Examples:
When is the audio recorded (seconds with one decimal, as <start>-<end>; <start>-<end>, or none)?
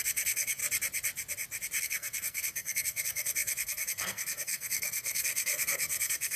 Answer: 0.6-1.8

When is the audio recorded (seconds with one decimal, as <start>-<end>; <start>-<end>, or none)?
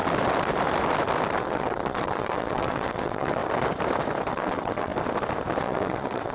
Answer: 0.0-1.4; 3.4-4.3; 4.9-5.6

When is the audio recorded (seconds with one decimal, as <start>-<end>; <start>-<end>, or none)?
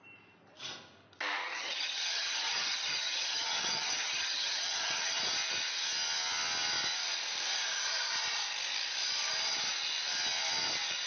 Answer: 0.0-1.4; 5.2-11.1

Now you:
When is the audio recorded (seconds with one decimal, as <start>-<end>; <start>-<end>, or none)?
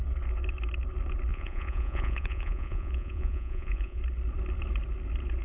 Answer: 0.0-1.3; 4.0-5.4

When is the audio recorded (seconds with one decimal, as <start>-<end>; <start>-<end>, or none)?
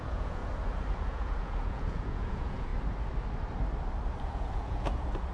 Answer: 0.4-1.1; 2.7-4.2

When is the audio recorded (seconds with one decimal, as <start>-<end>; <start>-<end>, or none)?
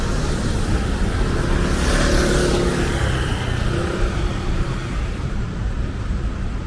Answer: 0.0-3.8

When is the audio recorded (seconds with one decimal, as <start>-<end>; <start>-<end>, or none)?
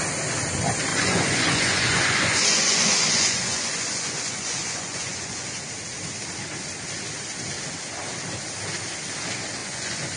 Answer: 0.0-0.9; 5.5-9.6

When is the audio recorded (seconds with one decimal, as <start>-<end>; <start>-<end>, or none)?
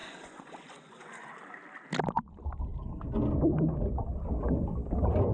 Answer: 1.3-5.3